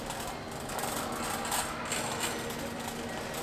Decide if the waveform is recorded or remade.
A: recorded